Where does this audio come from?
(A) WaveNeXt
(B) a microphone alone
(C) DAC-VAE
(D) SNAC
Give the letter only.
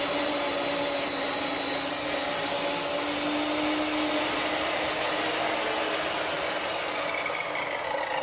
B